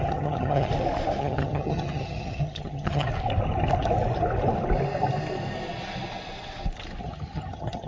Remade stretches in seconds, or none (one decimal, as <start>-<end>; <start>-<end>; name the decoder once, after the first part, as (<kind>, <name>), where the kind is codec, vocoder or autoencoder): 0.0-0.7 (vocoder, HiFi-GAN); 1.2-3.1; 7.0-7.9